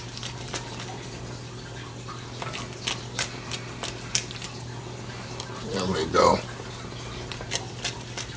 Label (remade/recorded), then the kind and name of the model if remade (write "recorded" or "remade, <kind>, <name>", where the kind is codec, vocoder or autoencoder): recorded